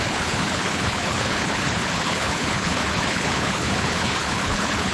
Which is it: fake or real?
fake